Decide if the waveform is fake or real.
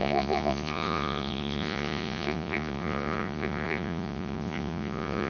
fake